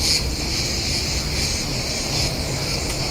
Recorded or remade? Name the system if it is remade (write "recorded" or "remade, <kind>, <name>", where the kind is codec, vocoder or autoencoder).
recorded